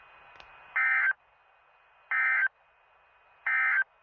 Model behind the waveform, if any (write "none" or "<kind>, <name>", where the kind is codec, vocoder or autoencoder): none